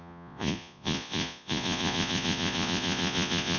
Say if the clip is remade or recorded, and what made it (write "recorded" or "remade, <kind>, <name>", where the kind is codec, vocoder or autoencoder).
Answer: remade, vocoder, Vocos